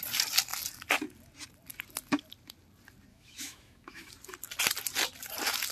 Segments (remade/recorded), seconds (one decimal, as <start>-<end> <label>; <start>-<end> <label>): 0.0-3.1 recorded; 3.1-4.1 remade; 4.1-5.7 recorded